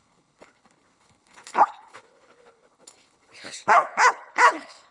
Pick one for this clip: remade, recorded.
remade